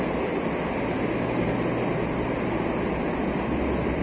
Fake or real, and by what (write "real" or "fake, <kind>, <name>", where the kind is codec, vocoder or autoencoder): real